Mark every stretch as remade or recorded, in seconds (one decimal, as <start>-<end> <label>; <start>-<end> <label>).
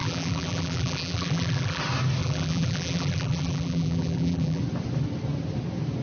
0.0-1.8 remade; 1.8-2.2 recorded; 2.2-4.6 remade; 4.6-6.0 recorded